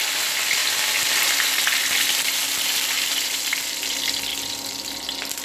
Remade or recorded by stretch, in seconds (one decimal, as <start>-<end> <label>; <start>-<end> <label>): 0.0-5.4 recorded